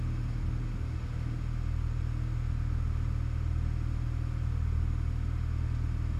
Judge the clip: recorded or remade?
recorded